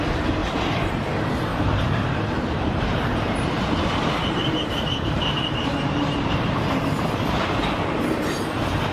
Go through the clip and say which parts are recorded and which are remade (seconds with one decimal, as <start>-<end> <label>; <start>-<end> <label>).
0.0-0.4 recorded; 0.4-0.9 remade; 0.9-1.5 recorded; 1.5-3.7 remade; 3.7-4.4 recorded; 4.4-6.8 remade; 6.8-8.9 recorded